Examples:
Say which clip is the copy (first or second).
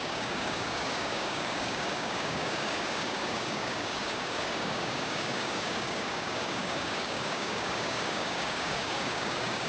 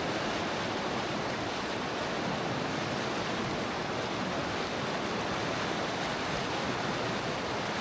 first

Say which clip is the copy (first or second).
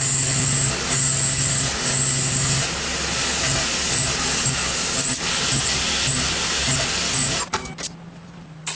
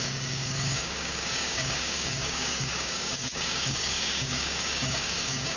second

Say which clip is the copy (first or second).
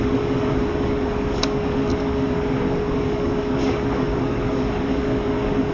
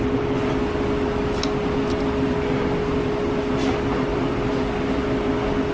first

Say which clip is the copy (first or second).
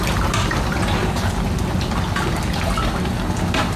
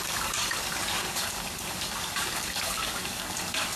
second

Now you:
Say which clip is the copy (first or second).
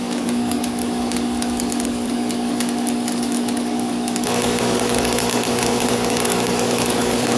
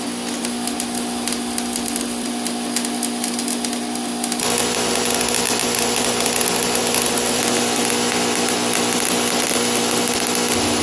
first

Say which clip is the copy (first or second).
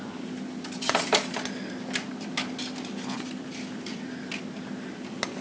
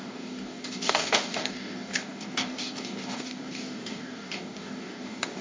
second